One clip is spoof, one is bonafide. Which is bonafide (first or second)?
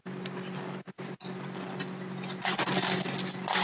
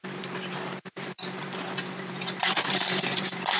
first